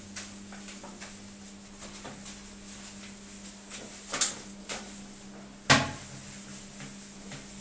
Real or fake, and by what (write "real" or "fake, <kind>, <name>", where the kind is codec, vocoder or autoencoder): real